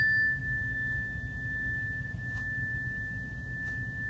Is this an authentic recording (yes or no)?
yes